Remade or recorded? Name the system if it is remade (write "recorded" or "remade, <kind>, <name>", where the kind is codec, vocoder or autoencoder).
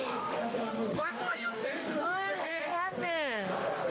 remade, autoencoder, DAC-VAE